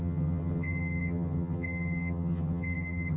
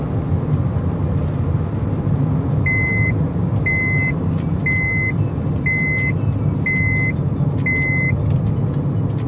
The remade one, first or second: first